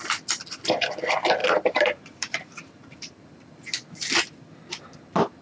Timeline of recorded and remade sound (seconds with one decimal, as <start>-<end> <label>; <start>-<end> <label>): 0.0-1.4 recorded; 1.4-3.3 remade; 3.3-5.4 recorded